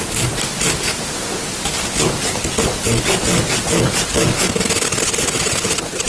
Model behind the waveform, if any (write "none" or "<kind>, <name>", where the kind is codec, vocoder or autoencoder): none